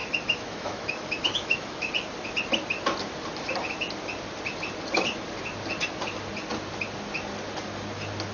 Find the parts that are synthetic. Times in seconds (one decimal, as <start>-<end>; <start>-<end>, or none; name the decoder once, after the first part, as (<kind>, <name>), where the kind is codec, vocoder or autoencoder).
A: 0.0-1.9 (autoencoder, DAC-VAE)